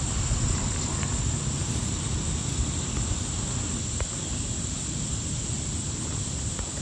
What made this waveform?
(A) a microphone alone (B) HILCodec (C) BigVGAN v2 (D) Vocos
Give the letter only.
A